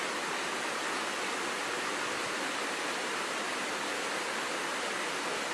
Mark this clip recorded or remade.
recorded